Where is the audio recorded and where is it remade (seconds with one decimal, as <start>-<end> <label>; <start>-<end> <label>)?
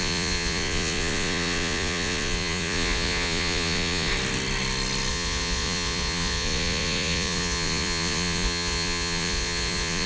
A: 0.0-4.1 remade; 4.1-5.1 recorded; 5.1-10.1 remade